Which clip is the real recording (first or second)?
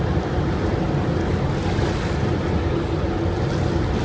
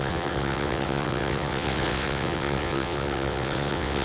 first